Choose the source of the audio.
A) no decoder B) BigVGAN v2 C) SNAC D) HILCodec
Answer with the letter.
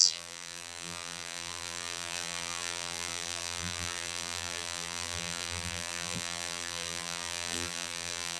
B